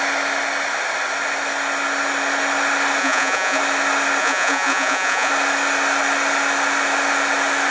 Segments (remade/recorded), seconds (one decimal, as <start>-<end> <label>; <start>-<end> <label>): 0.0-3.0 recorded; 3.0-3.6 remade; 3.6-4.2 recorded; 4.2-5.3 remade; 5.3-7.7 recorded